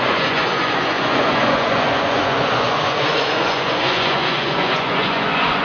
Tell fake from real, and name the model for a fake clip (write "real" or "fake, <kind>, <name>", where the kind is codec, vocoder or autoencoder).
fake, vocoder, Vocos